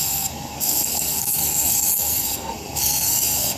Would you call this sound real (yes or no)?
no